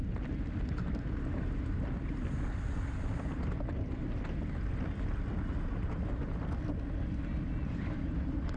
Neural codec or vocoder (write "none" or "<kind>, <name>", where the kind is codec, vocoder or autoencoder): none